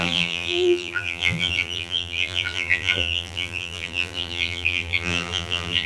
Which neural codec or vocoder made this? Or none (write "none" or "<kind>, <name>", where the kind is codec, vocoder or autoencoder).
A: vocoder, BigVGAN v2